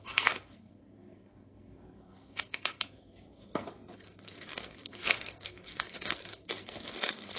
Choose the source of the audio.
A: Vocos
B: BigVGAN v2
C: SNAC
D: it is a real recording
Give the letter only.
C